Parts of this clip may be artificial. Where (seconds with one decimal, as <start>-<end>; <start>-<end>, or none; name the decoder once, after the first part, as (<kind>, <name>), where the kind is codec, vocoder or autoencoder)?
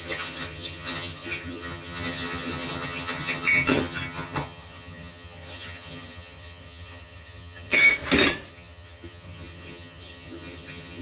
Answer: 0.0-7.9 (vocoder, HiFi-GAN); 8.5-11.0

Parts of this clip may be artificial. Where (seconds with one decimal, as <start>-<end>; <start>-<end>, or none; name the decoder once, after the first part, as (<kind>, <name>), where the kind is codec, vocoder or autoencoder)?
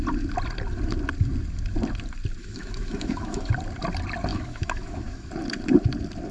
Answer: 2.4-3.5 (autoencoder, DAC-VAE); 4.3-5.3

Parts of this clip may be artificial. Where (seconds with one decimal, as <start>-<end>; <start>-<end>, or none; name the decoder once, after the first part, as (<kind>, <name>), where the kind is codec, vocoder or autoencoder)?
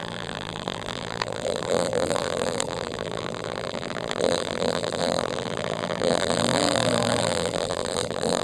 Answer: 0.0-8.4 (vocoder, BigVGAN v2)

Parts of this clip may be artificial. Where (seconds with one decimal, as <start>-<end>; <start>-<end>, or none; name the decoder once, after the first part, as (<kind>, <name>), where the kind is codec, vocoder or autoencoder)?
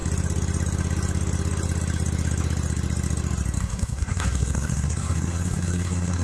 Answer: 3.6-6.2 (codec, SNAC)